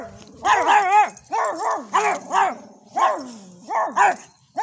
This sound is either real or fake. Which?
real